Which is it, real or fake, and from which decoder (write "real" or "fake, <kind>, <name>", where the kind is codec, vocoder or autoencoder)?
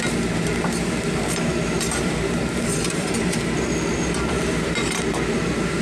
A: fake, vocoder, BigVGAN v2